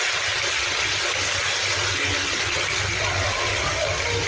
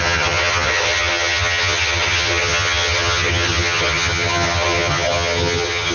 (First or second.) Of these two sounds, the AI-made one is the second